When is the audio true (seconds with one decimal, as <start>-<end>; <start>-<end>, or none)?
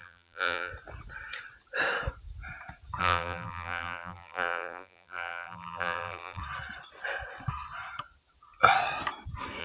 0.7-3.0; 6.4-9.6